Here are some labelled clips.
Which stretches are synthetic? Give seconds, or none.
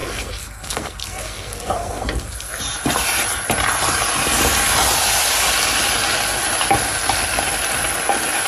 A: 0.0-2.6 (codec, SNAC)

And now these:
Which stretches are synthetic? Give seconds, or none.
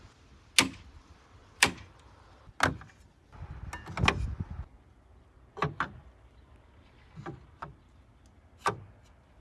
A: 1.4-2.5 (vocoder, BigVGAN v2)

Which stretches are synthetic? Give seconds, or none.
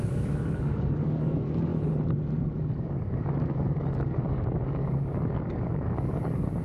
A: 0.0-1.7 (codec, DAC); 2.4-6.6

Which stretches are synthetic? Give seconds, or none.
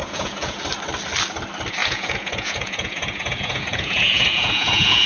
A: 0.0-0.6 (vocoder, Vocos); 1.8-5.1